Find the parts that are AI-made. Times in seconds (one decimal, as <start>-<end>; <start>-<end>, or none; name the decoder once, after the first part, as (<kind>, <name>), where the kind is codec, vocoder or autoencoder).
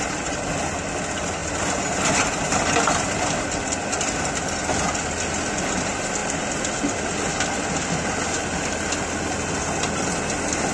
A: none